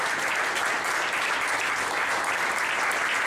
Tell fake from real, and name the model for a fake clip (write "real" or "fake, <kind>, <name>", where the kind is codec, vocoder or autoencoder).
real